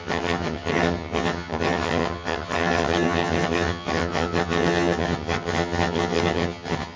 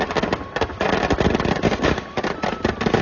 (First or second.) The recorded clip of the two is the second